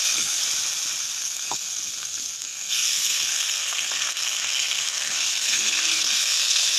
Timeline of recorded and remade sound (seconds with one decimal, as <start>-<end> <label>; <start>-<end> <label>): 0.0-0.4 remade; 0.4-1.0 recorded; 1.0-6.8 remade